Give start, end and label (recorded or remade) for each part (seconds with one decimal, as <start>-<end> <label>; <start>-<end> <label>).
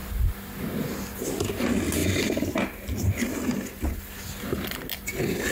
0.0-5.5 recorded